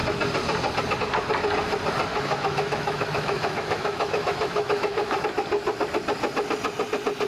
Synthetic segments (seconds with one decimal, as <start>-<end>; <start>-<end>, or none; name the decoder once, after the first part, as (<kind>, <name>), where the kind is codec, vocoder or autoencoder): 2.1-5.2 (autoencoder, DAC-VAE)